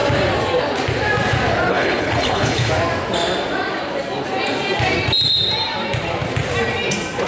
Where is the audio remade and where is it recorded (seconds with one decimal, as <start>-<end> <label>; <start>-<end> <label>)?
0.0-1.7 recorded; 1.7-2.7 remade; 2.7-7.3 recorded